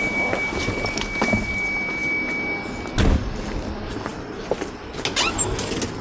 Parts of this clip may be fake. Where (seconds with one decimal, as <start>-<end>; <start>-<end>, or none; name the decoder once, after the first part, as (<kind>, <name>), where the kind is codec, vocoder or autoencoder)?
none